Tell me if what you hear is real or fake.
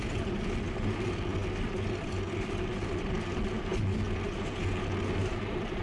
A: real